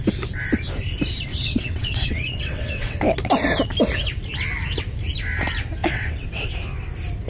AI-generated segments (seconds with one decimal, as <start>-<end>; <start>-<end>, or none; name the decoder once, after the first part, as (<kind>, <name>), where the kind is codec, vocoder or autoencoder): 1.3-3.0 (vocoder, WaveNeXt); 5.8-6.5